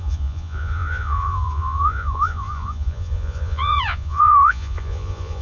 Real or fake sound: fake